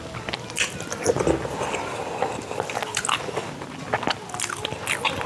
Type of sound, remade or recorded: recorded